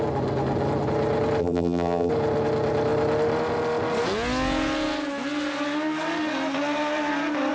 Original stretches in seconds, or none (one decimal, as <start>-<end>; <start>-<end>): 0.0-1.4; 2.1-7.5